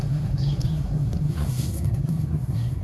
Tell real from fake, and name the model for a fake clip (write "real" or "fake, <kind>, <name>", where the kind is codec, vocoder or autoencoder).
fake, codec, SNAC